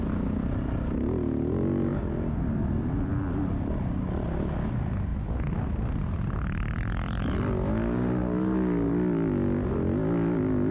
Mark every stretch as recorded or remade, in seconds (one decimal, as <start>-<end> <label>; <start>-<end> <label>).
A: 0.0-10.7 recorded